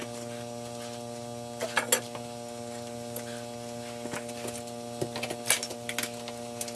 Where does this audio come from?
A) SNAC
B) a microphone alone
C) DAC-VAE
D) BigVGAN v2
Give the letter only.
B